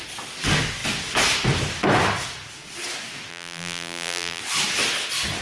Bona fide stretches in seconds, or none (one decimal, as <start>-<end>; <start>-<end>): 0.0-3.3; 4.4-5.4